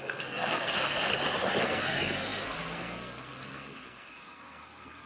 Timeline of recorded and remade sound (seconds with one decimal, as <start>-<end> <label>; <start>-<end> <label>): 0.0-1.1 remade; 1.1-1.6 recorded; 1.6-5.1 remade